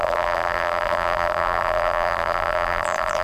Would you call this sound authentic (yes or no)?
no